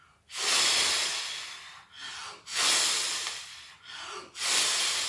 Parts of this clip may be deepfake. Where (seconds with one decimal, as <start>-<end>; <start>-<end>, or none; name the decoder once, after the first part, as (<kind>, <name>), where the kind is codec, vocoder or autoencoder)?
none